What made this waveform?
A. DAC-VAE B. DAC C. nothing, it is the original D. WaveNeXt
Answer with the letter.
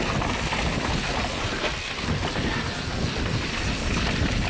C